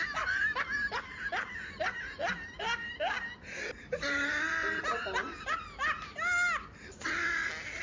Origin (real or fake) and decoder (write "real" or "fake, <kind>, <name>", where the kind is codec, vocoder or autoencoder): fake, vocoder, BigVGAN v2